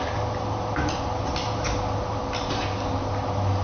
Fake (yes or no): no